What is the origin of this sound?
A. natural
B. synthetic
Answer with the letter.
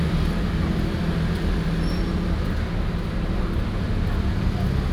A